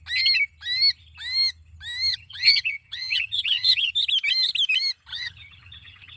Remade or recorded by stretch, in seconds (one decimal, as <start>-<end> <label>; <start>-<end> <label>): 0.0-2.1 recorded; 2.1-3.9 remade; 3.9-5.1 recorded; 5.1-6.2 remade